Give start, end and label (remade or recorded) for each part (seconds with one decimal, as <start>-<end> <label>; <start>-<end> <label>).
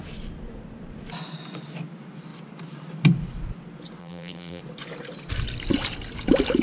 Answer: 0.0-4.0 recorded; 4.0-4.6 remade; 4.6-6.6 recorded